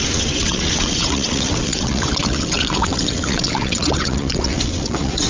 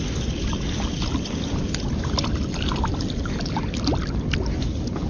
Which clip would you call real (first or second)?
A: second